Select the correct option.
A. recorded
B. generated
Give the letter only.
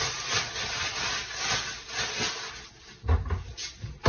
A